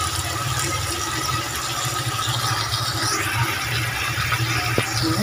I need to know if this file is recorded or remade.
recorded